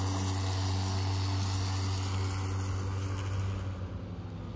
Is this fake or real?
real